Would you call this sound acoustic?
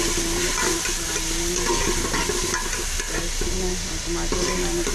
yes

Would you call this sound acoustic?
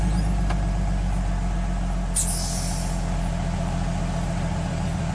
yes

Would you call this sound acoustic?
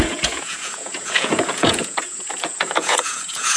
no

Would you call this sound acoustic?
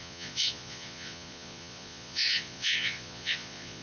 no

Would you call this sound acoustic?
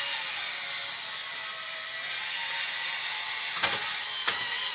yes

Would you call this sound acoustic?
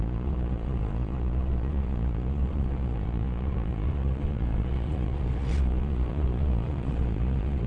no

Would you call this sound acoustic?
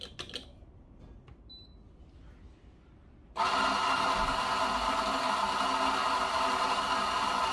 yes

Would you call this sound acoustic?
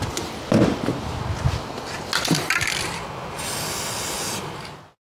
yes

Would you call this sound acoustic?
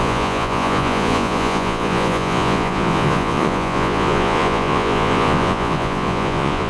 no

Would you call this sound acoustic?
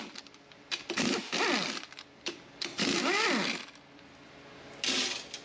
yes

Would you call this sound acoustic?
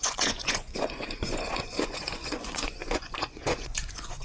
no